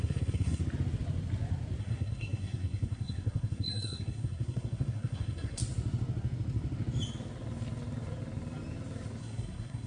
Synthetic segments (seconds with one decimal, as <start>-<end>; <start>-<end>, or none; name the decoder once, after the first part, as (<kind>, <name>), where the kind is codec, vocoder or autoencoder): 0.0-0.6 (codec, SNAC); 1.8-5.6; 9.2-9.9

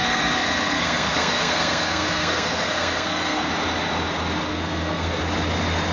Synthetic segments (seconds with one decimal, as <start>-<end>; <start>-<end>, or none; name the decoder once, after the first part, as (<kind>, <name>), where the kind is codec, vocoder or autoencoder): 0.0-3.5 (codec, SNAC); 4.5-5.2

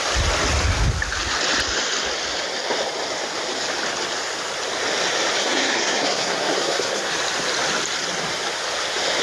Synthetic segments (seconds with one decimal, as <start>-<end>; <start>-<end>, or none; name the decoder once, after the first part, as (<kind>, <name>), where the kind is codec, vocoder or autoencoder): 5.4-7.1 (codec, SNAC)

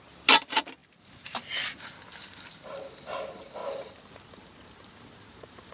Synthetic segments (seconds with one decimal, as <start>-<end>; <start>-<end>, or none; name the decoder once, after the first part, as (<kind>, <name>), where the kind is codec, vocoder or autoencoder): 0.8-1.4 (vocoder, BigVGAN v2); 3.6-5.7

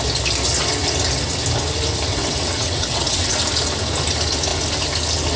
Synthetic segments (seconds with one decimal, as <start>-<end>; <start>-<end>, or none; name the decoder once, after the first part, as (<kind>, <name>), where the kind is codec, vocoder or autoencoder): 2.1-3.4 (vocoder, WaveNeXt)

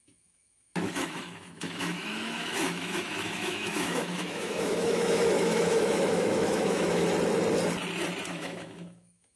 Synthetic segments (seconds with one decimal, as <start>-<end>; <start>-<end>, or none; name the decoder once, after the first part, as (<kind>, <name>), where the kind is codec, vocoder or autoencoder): 0.0-7.0 (autoencoder, DAC-VAE); 8.3-9.4

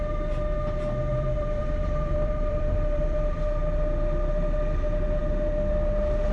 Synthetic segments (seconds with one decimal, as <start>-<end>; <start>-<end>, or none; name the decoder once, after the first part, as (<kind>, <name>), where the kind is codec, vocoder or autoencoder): 1.1-3.4 (vocoder, BigVGAN v2)